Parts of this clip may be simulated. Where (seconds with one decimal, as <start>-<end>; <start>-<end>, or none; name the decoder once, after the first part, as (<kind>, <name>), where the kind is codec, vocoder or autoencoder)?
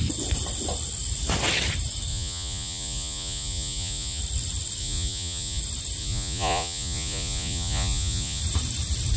2.1-4.2 (vocoder, Vocos); 4.8-5.6; 6.0-8.4